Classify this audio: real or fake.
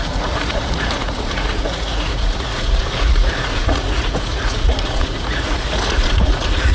fake